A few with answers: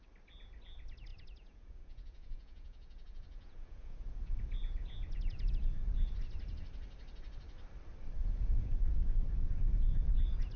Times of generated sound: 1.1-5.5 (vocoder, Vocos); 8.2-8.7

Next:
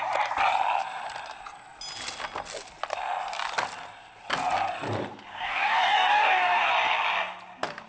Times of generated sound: 5.3-6.7 (codec, DAC)